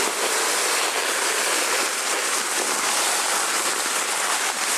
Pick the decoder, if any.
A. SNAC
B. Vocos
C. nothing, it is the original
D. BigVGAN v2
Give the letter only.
C